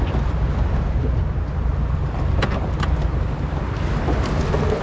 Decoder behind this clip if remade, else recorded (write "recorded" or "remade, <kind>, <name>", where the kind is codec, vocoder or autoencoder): recorded